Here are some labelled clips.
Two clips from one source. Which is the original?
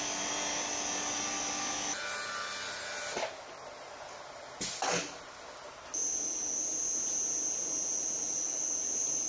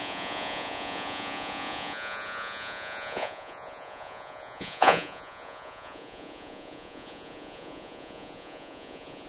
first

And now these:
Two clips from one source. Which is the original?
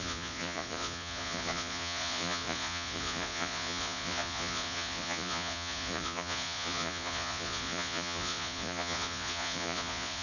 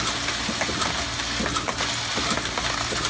second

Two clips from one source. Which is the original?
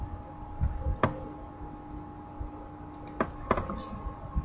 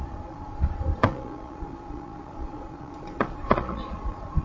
first